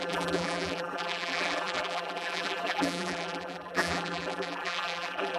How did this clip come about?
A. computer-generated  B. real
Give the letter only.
A